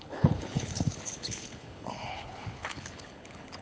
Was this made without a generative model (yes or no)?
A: no